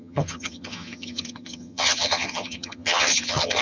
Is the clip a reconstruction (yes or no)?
yes